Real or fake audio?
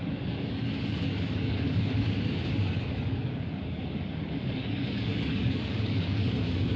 fake